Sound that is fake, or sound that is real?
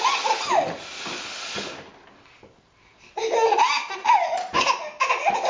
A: real